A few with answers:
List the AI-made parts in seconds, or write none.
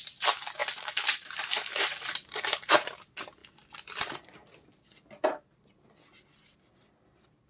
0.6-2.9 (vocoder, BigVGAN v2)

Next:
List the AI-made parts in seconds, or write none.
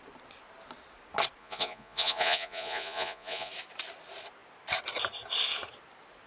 1.4-3.5 (vocoder, Vocos)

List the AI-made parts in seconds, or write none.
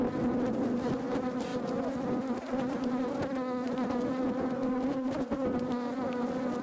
none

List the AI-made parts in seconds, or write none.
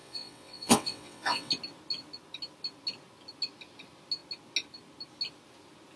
0.0-1.5 (vocoder, WaveNeXt)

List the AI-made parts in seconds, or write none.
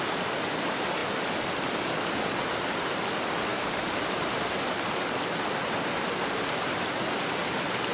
3.5-6.9 (vocoder, BigVGAN v2)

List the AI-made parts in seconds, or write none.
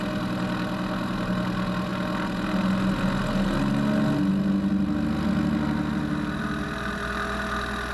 none